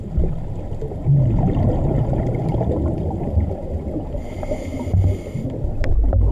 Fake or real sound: real